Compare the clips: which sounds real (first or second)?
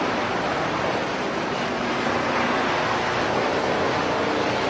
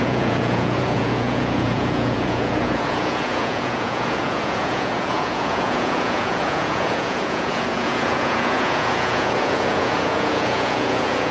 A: first